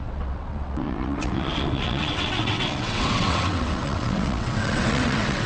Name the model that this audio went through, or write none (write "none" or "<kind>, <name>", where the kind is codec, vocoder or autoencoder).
vocoder, WaveNeXt